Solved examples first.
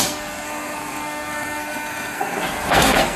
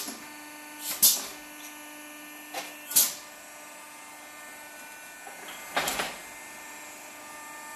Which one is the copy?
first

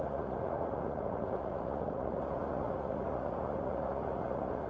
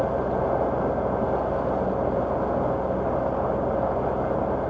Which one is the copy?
first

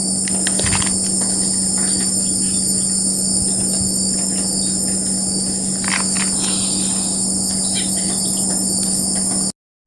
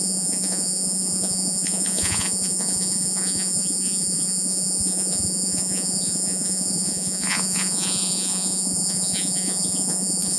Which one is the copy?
second